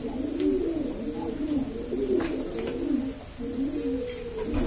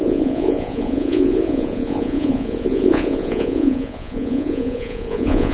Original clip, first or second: first